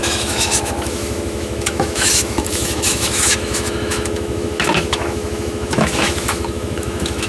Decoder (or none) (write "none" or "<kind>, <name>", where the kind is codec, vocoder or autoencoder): autoencoder, DAC-VAE